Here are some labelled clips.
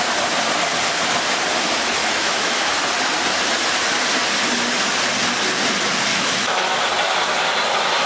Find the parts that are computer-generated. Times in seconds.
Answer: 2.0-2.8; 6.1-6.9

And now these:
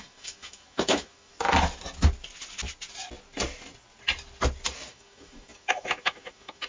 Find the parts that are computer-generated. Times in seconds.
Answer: 0.0-1.3; 4.9-6.7

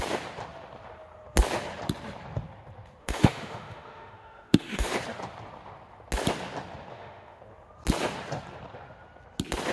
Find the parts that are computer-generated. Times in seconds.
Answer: 3.0-4.9; 6.9-7.4

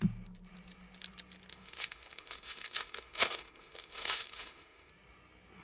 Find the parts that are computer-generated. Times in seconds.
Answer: 1.5-4.9